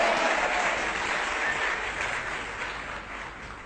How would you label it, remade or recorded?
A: recorded